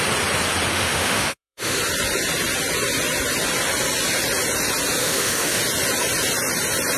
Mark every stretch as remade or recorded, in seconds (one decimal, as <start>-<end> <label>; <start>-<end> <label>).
0.0-0.7 recorded; 0.7-1.8 remade; 1.8-5.0 recorded; 5.0-5.6 remade; 5.6-7.0 recorded